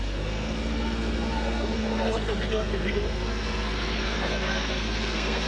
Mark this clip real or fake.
fake